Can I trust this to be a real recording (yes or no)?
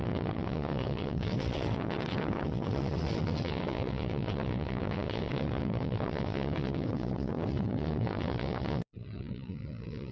no